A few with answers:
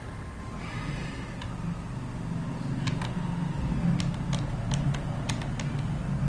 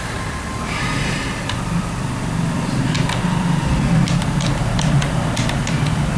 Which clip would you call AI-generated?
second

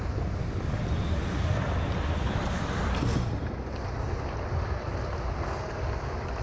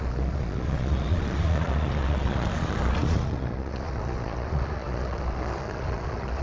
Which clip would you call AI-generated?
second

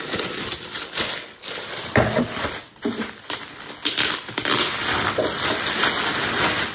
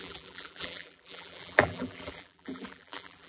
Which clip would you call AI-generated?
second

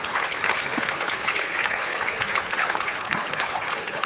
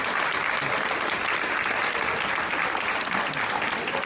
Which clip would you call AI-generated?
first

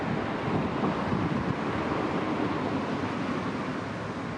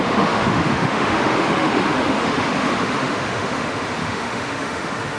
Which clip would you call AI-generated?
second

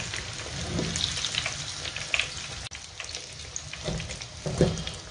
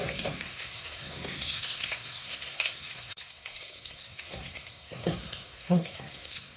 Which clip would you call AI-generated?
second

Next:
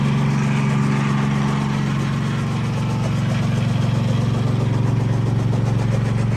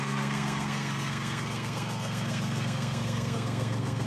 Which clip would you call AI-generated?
second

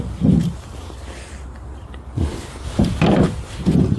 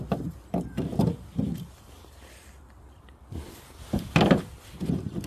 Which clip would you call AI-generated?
second